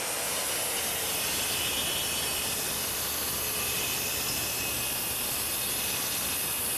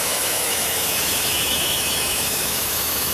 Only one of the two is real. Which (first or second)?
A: first